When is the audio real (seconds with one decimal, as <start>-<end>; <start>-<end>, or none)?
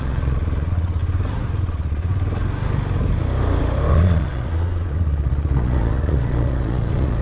1.0-1.6; 2.1-3.9